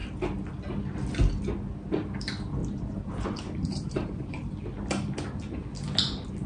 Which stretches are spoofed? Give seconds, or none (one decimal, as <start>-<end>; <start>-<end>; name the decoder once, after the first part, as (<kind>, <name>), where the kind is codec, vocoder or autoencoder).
2.6-4.6 (vocoder, BigVGAN v2)